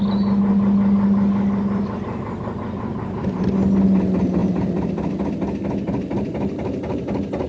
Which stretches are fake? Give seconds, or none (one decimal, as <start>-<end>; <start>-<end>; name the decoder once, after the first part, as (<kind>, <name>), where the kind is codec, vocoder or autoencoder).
none